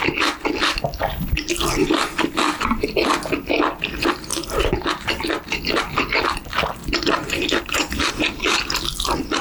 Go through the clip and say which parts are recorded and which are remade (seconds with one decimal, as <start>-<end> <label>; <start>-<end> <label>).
0.0-1.0 recorded; 1.0-1.5 remade; 1.5-4.3 recorded; 4.3-6.2 remade; 6.2-6.8 recorded; 6.8-8.1 remade; 8.1-9.4 recorded